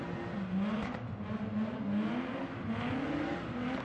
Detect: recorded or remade recorded